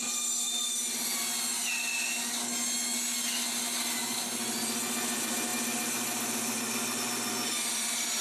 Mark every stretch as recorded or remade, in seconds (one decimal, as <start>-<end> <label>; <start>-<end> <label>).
0.0-8.2 recorded